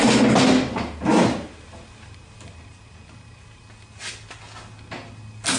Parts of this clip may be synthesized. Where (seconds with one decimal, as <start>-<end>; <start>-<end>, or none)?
1.1-3.6

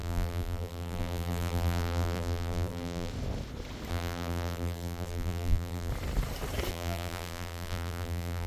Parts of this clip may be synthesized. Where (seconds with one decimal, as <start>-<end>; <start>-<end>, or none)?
0.0-3.1; 3.9-5.9; 6.7-8.5

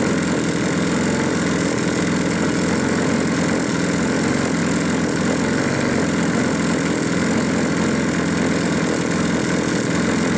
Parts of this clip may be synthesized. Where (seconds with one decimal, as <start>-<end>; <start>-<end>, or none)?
none

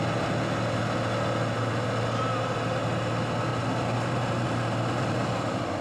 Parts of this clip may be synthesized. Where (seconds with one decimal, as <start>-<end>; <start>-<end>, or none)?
3.5-5.2

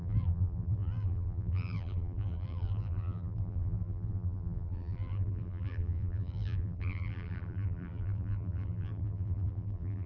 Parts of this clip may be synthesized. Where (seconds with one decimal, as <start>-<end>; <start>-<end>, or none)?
0.0-10.1

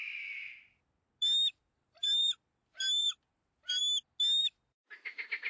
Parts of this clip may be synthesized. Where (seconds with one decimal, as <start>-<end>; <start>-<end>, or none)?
1.5-3.8; 4.4-4.9

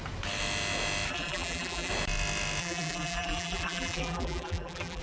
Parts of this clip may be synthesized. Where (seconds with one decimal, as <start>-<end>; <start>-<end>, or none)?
1.1-1.9; 2.6-5.0